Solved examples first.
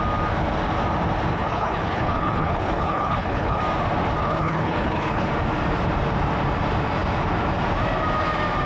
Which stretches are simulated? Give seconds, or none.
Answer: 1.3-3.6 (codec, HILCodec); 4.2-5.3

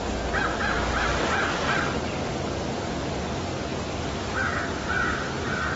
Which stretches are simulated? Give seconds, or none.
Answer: none

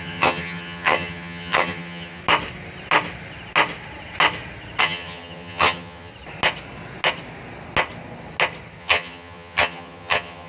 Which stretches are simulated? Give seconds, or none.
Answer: 0.0-2.2 (vocoder, HiFi-GAN); 4.8-6.1; 8.8-10.5